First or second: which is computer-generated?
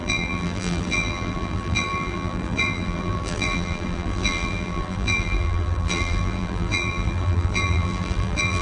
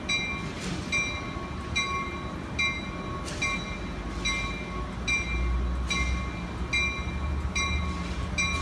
first